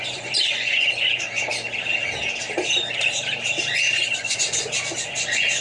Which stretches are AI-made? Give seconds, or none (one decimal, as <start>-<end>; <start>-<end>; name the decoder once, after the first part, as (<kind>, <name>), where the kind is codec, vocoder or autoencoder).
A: 0.0-1.5 (vocoder, Vocos); 3.7-5.6